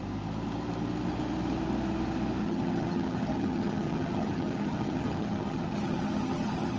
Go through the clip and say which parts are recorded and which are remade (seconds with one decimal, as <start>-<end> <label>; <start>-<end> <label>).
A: 0.0-2.4 recorded; 2.4-6.8 remade

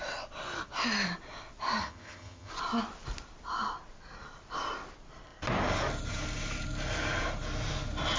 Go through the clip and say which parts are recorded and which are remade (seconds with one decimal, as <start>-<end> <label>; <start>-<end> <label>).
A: 0.0-1.8 recorded; 1.8-2.5 remade; 2.5-8.2 recorded

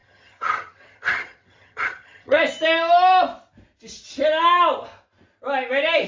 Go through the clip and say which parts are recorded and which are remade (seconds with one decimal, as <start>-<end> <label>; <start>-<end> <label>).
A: 0.0-2.4 remade; 2.4-6.1 recorded

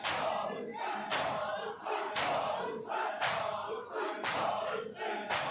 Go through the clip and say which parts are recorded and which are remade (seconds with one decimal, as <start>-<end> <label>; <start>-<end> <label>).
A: 0.0-5.5 recorded

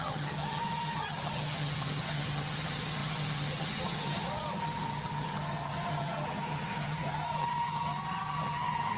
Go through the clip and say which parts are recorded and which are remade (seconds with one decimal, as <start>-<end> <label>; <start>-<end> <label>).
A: 0.0-9.0 remade

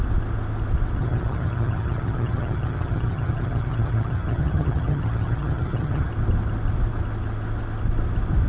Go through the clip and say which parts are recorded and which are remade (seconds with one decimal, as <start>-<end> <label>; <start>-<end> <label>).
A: 0.0-1.0 recorded; 1.0-6.1 remade; 6.1-8.5 recorded

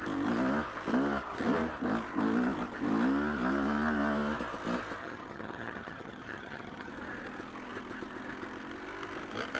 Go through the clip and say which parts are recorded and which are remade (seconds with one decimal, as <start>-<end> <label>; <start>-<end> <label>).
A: 0.0-5.0 recorded; 5.0-6.9 remade; 6.9-9.6 recorded

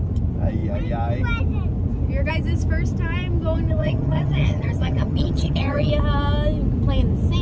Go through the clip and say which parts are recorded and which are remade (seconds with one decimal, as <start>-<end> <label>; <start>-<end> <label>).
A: 0.0-3.8 recorded; 3.8-5.9 remade; 5.9-7.4 recorded